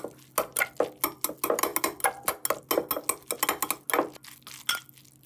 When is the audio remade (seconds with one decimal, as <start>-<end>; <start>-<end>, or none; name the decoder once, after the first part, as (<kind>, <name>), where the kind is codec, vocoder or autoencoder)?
none